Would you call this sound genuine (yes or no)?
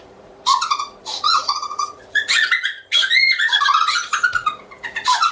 no